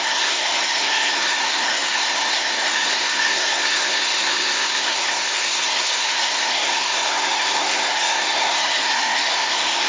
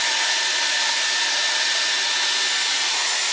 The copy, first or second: first